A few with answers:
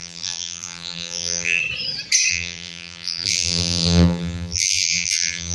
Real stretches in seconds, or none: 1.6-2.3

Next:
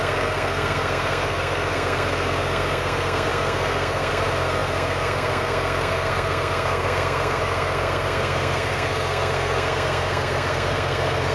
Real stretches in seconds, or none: none